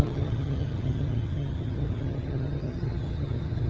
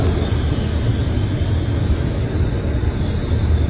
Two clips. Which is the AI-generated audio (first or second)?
first